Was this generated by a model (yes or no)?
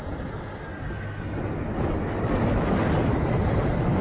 no